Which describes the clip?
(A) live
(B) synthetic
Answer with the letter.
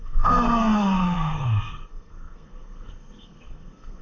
B